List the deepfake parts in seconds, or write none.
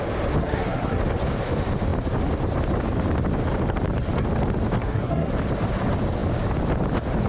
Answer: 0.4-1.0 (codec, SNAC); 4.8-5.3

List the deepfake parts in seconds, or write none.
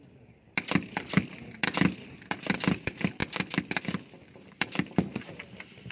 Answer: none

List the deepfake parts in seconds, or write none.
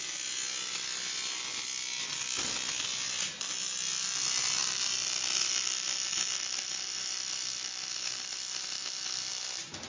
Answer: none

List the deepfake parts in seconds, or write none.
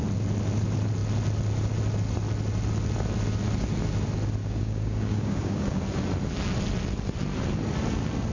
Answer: 4.4-5.8 (codec, DAC)